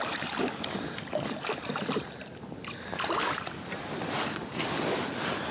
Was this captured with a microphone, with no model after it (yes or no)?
no